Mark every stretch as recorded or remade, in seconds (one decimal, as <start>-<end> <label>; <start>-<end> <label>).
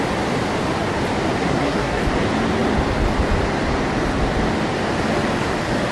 0.0-1.4 recorded; 1.4-2.0 remade; 2.0-5.9 recorded